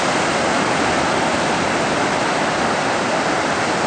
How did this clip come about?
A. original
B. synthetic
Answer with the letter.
A